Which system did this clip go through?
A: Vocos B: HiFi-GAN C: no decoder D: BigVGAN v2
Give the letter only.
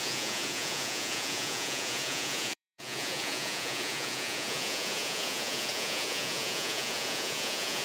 A